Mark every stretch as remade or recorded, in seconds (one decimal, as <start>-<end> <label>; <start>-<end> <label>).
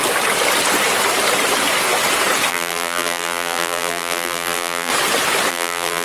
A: 0.0-2.5 recorded; 2.5-4.9 remade; 4.9-5.5 recorded; 5.5-6.0 remade